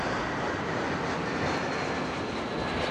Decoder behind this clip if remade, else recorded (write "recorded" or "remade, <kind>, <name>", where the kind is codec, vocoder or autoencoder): recorded